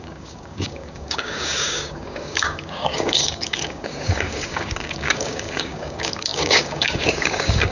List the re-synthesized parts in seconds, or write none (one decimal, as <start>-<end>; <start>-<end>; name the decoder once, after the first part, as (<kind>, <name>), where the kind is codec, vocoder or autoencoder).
0.0-7.7 (codec, DAC)